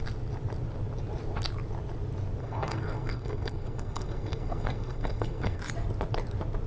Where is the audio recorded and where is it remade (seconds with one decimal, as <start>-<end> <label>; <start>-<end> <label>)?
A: 0.0-2.4 recorded; 2.4-5.6 remade; 5.6-6.7 recorded